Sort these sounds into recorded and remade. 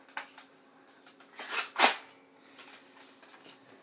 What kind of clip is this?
recorded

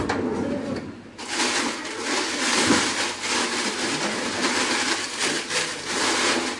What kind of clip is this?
recorded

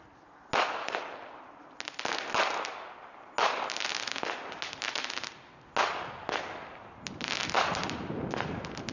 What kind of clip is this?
recorded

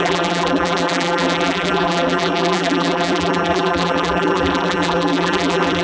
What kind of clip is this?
remade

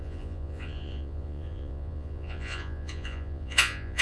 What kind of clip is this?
remade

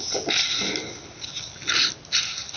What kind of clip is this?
recorded